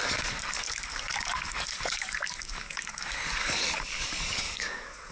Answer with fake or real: fake